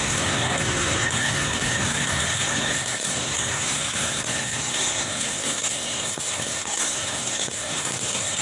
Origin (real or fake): fake